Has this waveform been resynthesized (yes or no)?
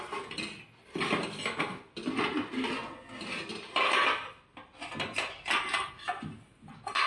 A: no